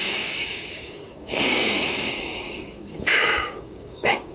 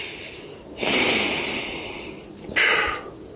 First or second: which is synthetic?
first